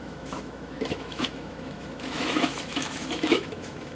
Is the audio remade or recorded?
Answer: remade